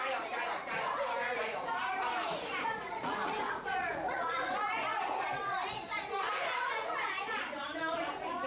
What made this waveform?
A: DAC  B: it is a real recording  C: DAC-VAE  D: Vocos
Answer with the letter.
D